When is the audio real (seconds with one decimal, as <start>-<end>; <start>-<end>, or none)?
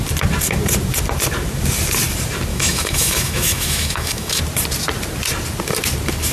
0.0-2.5; 4.4-6.3